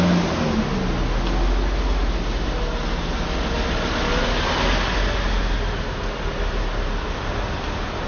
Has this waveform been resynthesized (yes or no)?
no